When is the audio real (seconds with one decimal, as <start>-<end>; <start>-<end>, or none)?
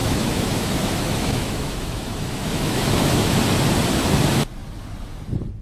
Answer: 3.4-5.6